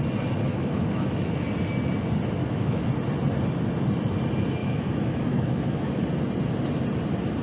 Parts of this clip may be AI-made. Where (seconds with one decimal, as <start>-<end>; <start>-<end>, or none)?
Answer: 0.5-1.3; 2.4-2.9; 4.6-6.0